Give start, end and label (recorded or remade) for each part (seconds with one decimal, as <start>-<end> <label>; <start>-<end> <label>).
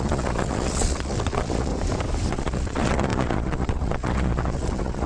0.0-1.7 remade; 1.7-2.3 recorded; 2.3-5.1 remade